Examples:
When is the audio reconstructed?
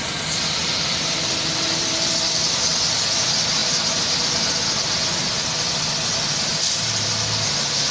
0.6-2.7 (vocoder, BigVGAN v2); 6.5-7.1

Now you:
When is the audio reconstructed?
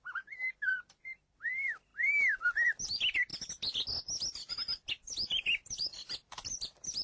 0.0-3.3 (vocoder, BigVGAN v2); 4.5-7.0